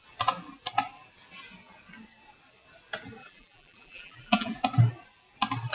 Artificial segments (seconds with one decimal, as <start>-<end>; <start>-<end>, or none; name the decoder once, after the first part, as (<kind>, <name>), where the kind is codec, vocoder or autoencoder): 3.2-4.6 (vocoder, BigVGAN v2)